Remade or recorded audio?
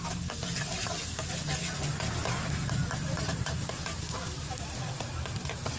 recorded